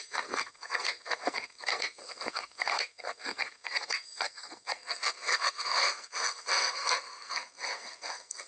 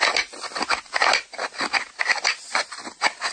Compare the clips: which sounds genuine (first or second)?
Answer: second